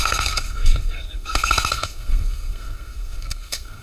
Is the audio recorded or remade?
remade